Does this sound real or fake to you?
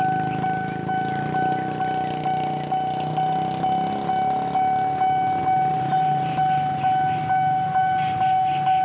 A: real